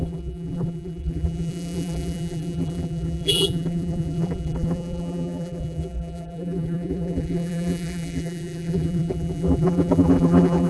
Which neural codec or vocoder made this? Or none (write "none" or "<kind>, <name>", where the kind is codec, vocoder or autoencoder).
vocoder, BigVGAN v2